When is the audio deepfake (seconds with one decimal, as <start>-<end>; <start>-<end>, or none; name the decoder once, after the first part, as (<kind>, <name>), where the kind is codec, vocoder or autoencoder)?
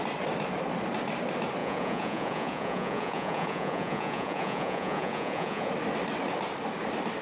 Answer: 1.6-5.7 (vocoder, Vocos)